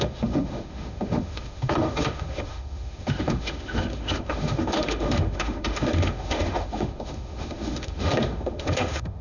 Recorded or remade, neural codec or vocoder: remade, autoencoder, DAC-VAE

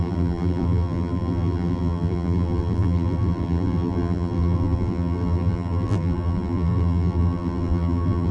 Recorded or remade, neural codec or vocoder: remade, vocoder, BigVGAN v2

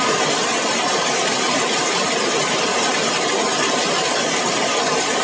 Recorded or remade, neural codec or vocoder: remade, vocoder, BigVGAN v2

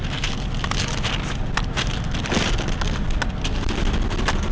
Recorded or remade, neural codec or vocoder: recorded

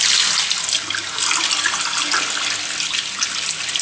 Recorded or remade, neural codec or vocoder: recorded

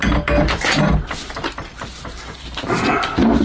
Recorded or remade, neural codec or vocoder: recorded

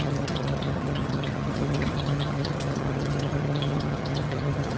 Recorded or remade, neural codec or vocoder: remade, vocoder, HiFi-GAN